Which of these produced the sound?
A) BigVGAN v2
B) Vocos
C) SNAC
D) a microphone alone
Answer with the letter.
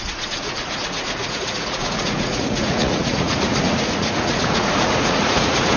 B